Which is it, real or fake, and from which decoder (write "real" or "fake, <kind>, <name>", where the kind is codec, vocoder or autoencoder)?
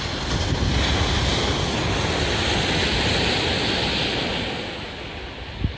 real